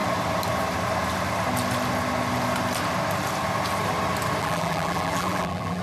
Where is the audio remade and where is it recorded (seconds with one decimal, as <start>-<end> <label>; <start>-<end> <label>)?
0.0-4.4 recorded; 4.4-5.8 remade

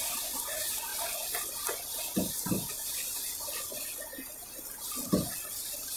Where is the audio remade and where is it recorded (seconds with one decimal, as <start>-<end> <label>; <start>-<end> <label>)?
0.0-6.0 recorded

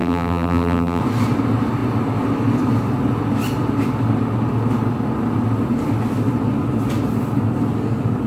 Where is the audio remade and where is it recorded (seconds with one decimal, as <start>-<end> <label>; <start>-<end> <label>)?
0.0-1.0 remade; 1.0-8.3 recorded

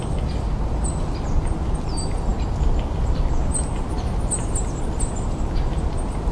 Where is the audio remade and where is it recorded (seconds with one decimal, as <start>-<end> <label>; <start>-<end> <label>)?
0.0-6.3 recorded

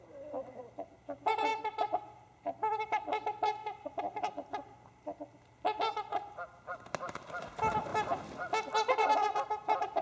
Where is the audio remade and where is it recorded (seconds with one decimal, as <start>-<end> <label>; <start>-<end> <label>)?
0.0-1.5 recorded; 1.5-2.3 remade; 2.3-3.6 recorded; 3.6-4.9 remade; 4.9-10.0 recorded

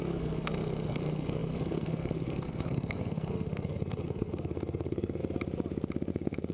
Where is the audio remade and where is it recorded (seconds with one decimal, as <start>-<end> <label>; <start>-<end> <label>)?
0.0-5.2 remade; 5.2-6.1 recorded; 6.1-6.5 remade

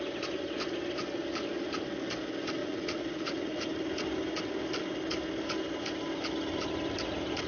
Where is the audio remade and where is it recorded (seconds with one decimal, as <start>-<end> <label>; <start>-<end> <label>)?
0.0-2.6 recorded; 2.6-3.6 remade; 3.6-7.5 recorded